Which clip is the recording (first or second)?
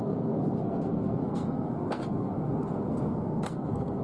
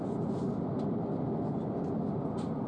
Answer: second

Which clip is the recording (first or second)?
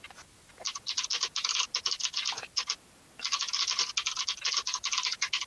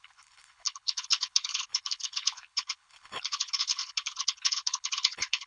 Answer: first